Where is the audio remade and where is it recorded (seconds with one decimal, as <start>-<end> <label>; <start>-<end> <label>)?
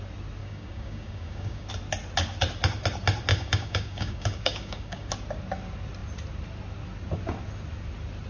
0.0-0.4 recorded; 0.4-1.7 remade; 1.7-3.3 recorded; 3.3-5.1 remade; 5.1-8.3 recorded